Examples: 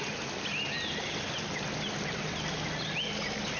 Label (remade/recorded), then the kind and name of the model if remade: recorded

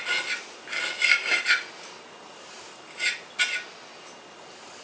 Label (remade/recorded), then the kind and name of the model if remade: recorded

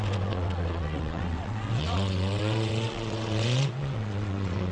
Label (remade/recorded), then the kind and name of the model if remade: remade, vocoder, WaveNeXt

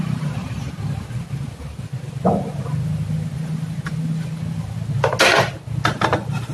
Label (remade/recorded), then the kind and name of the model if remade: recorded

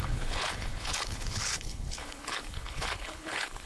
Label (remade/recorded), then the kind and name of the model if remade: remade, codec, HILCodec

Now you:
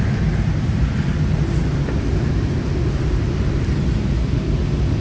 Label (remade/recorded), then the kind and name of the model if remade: recorded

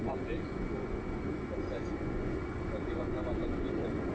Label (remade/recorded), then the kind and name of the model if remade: remade, vocoder, Vocos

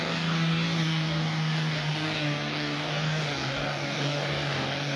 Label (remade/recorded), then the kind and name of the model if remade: remade, codec, DAC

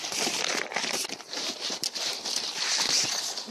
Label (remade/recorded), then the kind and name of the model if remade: remade, vocoder, BigVGAN v2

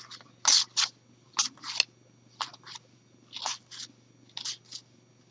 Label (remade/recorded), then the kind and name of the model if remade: recorded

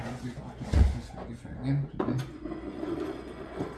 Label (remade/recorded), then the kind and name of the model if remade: remade, vocoder, Vocos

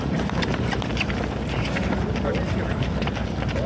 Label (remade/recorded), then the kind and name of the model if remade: remade, vocoder, BigVGAN v2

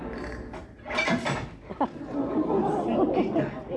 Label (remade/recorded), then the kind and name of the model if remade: recorded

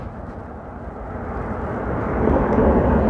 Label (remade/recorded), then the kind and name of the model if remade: recorded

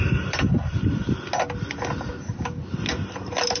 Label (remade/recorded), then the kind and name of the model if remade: recorded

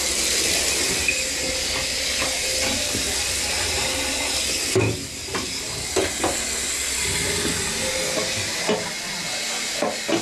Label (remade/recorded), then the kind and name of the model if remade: recorded